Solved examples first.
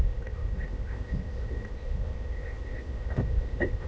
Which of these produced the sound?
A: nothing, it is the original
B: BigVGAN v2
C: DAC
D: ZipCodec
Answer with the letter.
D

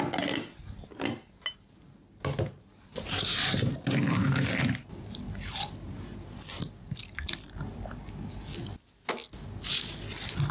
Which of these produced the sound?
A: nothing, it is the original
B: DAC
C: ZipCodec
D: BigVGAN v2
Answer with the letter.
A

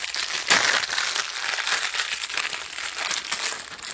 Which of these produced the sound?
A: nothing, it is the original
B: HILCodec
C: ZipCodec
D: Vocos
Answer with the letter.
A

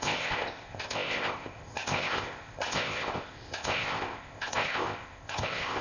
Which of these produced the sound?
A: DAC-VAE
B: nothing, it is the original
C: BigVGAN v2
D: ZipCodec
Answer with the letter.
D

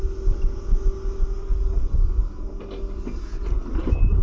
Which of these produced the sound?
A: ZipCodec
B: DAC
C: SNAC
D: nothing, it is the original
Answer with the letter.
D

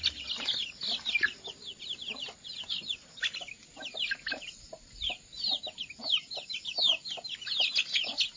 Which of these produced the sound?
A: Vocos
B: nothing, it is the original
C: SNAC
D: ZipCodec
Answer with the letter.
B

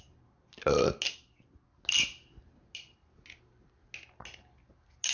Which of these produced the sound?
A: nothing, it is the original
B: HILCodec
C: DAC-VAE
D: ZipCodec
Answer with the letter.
A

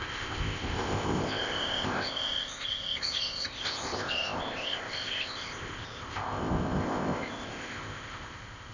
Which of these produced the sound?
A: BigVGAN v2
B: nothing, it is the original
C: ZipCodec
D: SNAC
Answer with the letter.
C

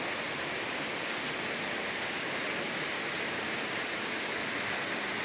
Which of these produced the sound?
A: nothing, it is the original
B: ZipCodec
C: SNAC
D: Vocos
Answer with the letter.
A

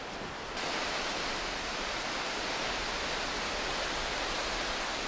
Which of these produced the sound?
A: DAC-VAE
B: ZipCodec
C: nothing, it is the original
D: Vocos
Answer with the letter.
C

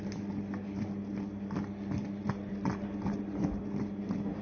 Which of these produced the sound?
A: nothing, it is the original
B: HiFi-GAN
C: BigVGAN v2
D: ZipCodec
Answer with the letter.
A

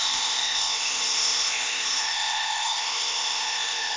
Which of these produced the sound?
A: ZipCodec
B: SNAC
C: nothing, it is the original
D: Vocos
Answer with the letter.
A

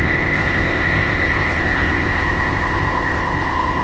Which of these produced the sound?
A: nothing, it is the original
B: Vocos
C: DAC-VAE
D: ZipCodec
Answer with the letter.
D